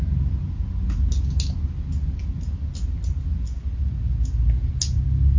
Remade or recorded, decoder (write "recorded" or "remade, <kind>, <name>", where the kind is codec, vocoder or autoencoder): recorded